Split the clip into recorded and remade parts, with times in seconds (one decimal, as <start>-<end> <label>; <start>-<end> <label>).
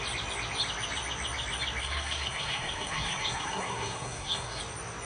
0.0-1.8 recorded; 1.8-4.6 remade; 4.6-5.1 recorded